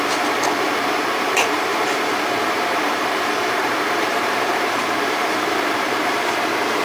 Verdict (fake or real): fake